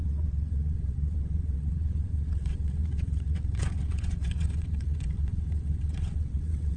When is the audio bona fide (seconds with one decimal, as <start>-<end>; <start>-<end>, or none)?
none